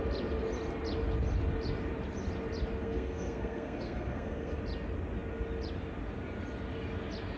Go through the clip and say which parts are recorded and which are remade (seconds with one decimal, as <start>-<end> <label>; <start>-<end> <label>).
0.0-2.8 recorded; 2.8-4.6 remade; 4.6-7.4 recorded